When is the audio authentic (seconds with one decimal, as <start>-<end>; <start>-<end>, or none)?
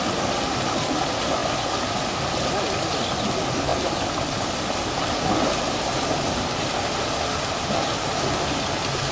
0.0-1.4; 2.9-3.7; 6.5-9.1